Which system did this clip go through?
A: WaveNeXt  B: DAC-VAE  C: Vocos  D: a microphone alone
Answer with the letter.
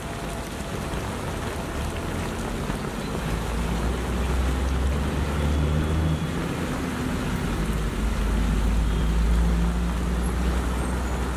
D